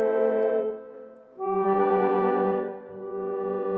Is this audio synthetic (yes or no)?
yes